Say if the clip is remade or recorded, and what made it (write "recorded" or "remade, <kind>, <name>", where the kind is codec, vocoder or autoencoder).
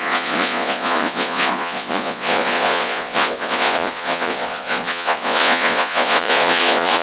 remade, vocoder, Vocos